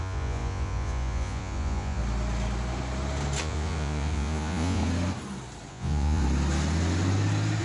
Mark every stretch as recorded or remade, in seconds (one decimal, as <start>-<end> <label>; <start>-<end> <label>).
0.0-2.0 remade; 2.0-3.4 recorded; 3.4-4.8 remade; 4.8-5.7 recorded; 5.7-6.2 remade; 6.2-7.6 recorded